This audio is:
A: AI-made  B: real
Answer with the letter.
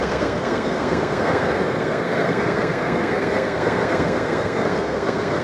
A